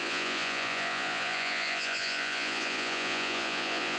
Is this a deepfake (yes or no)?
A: yes